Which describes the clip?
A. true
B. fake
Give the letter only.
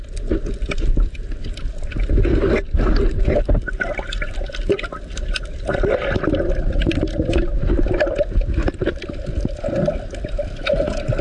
A